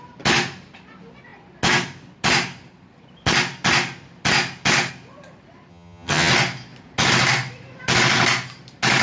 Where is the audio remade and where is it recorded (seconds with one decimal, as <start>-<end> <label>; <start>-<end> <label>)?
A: 0.0-5.7 recorded; 5.7-6.3 remade; 6.3-9.0 recorded